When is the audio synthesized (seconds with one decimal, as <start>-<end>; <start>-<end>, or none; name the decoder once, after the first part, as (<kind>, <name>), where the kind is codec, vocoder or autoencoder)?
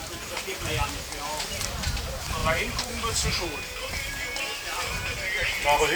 none